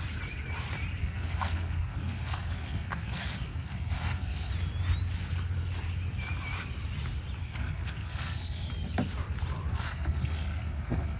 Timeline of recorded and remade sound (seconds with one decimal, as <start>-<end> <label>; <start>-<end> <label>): 0.0-1.0 recorded; 1.0-4.5 remade; 4.5-7.4 recorded; 7.4-8.7 remade; 8.7-9.7 recorded; 9.7-11.2 remade

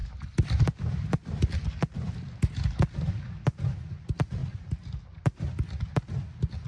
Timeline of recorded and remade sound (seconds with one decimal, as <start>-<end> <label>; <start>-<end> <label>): 0.0-6.7 recorded

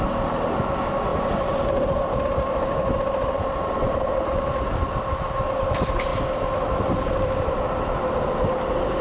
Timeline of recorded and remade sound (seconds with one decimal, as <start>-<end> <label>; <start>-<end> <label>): 0.0-9.0 recorded

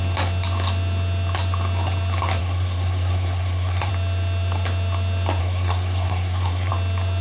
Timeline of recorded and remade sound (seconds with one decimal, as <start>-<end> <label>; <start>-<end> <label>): 0.0-2.4 recorded; 2.4-3.9 remade; 3.9-5.4 recorded; 5.4-6.7 remade; 6.7-7.2 recorded